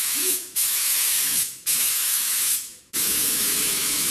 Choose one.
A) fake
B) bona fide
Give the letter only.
A